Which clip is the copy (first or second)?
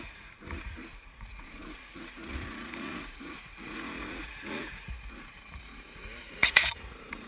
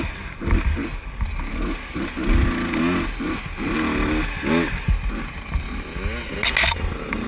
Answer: first